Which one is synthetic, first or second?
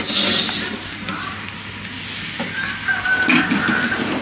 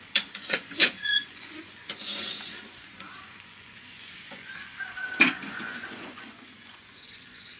second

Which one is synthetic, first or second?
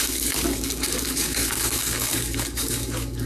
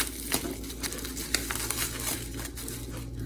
first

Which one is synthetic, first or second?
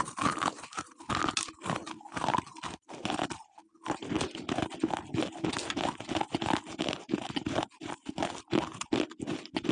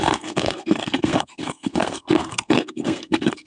second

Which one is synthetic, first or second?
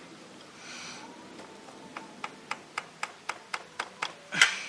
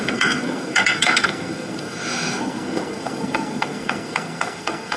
second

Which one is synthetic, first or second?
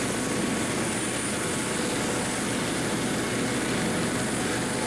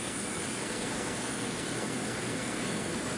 second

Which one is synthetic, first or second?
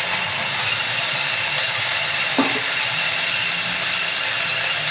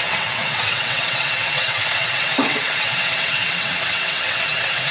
second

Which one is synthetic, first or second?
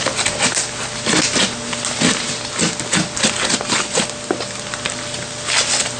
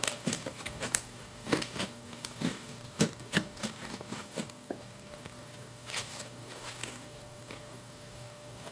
second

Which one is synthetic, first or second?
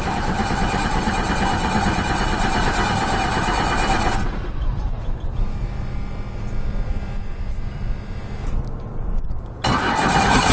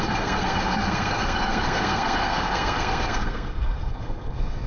second